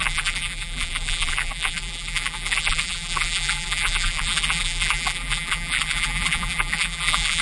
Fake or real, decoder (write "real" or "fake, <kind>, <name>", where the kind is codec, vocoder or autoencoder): fake, vocoder, BigVGAN v2